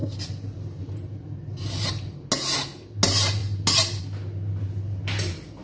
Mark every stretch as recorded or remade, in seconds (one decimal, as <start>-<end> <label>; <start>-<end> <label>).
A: 0.0-5.6 recorded

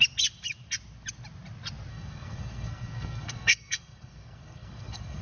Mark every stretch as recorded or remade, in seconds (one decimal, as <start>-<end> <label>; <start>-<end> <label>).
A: 0.0-1.9 recorded; 1.9-5.2 remade

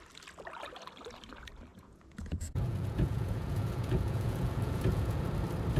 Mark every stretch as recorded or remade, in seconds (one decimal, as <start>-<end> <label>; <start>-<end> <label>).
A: 0.0-1.7 recorded; 1.7-5.2 remade; 5.2-5.8 recorded

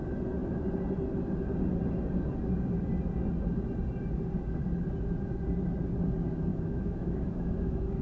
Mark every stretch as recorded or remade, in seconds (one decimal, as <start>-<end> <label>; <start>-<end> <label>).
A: 0.0-6.5 recorded; 6.5-8.0 remade